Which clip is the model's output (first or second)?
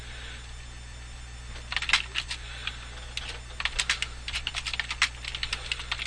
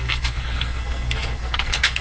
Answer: second